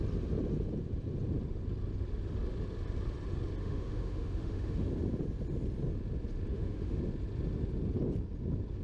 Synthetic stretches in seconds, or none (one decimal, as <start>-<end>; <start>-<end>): 3.6-4.9; 6.5-7.0